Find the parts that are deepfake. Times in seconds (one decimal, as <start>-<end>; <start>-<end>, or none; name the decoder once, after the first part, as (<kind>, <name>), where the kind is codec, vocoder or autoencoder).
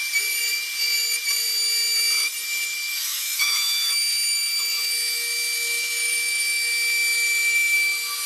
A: 2.9-6.7 (autoencoder, DAC-VAE)